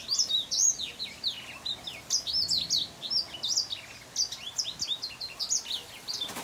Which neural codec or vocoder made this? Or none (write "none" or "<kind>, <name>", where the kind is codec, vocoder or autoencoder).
none